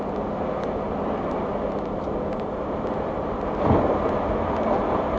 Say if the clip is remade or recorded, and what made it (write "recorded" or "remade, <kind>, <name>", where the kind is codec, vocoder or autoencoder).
recorded